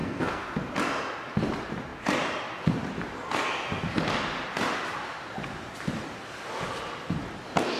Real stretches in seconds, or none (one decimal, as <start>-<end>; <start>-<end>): 0.7-7.8